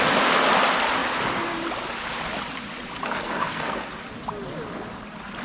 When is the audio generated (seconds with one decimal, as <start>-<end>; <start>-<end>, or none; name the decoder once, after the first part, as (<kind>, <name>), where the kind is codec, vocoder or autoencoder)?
3.0-3.9 (codec, SNAC)